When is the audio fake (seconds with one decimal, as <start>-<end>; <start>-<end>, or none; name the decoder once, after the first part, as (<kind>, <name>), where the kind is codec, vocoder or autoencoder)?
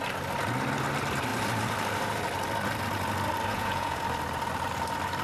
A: 3.5-4.0 (vocoder, Vocos)